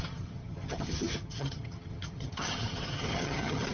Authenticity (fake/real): fake